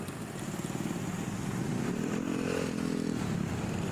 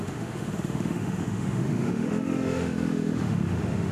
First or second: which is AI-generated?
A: second